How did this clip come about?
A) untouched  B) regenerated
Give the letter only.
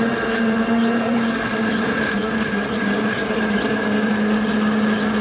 A